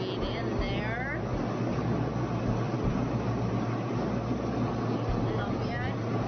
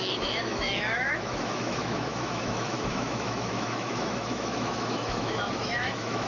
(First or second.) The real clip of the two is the first